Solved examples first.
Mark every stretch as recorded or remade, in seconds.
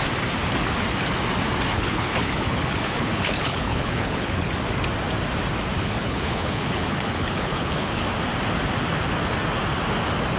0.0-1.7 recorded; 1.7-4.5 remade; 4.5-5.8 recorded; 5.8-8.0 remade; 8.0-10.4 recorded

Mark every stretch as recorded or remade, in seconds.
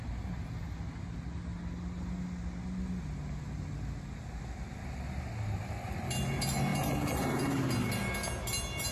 0.0-8.9 recorded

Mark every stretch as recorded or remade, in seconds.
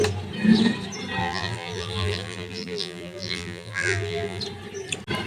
0.0-1.2 recorded; 1.2-4.4 remade; 4.4-5.3 recorded